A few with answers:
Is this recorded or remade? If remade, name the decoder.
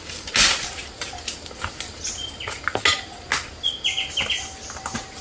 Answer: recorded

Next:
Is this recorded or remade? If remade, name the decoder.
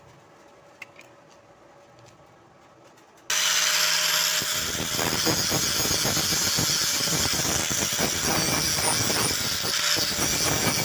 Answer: recorded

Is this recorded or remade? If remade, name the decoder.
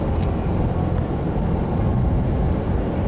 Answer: recorded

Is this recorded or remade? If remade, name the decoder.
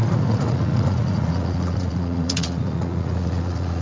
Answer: remade, vocoder, Vocos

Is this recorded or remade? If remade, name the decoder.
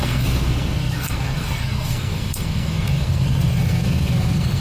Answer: remade, codec, SNAC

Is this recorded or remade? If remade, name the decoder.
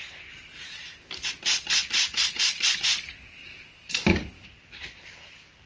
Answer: recorded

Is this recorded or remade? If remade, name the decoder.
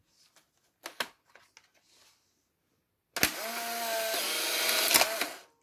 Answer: recorded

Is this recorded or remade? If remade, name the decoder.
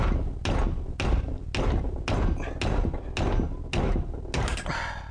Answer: recorded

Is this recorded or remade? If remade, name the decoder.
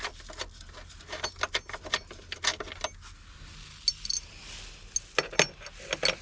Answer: recorded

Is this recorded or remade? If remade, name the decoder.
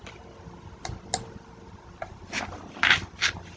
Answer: recorded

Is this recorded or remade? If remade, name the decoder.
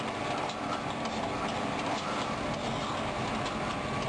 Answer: recorded